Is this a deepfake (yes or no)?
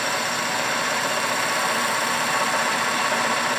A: yes